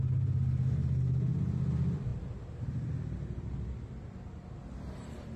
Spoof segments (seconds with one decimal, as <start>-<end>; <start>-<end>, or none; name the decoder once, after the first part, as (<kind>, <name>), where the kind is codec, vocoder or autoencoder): none